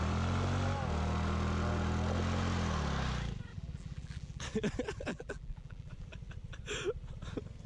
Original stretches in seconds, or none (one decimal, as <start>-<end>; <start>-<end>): 0.0-3.5; 4.4-5.1; 5.9-7.7